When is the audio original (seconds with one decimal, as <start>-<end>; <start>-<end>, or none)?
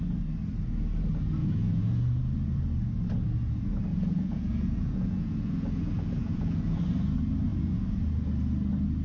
0.0-1.4; 2.1-3.9; 6.8-7.5; 8.0-9.0